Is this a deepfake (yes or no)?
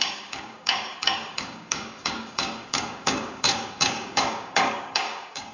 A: yes